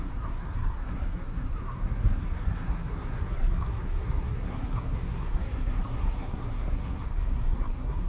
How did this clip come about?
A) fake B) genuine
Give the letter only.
A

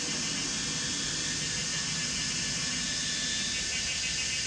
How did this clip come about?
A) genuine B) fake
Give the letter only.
A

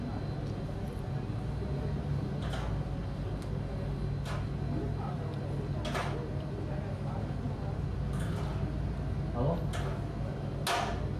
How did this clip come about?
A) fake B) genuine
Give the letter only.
B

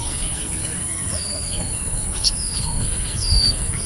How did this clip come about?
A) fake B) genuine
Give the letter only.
A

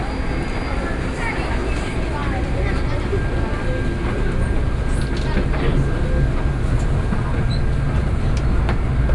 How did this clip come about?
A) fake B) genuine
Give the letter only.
B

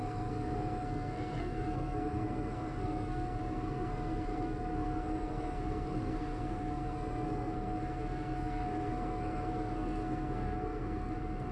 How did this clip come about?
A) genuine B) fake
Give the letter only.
B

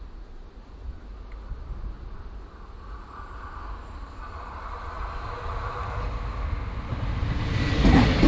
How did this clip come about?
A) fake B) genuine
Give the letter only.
B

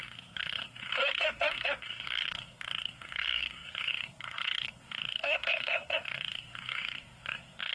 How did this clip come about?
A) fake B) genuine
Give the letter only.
A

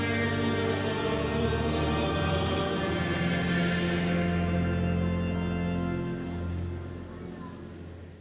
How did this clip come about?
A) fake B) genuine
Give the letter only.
B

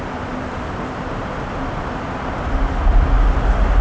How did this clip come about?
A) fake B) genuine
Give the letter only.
B